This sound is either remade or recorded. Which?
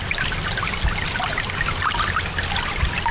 recorded